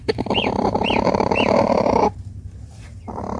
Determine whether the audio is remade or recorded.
remade